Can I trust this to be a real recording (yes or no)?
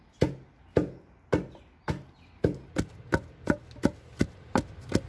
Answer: yes